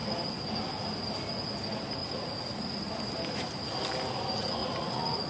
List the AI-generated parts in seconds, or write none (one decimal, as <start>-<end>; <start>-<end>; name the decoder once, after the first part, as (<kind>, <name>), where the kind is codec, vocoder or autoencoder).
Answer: 2.0-2.9 (vocoder, Vocos); 4.6-5.3